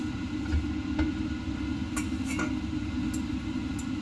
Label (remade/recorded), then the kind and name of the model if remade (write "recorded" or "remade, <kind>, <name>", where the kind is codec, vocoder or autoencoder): recorded